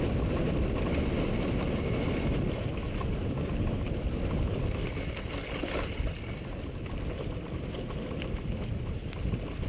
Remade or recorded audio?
recorded